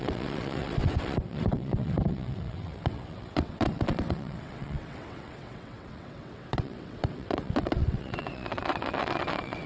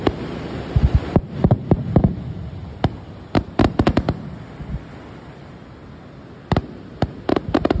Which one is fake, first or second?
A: first